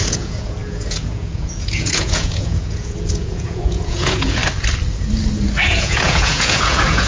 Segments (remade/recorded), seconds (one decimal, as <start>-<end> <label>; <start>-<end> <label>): 0.0-4.4 remade; 4.4-5.8 recorded; 5.8-7.1 remade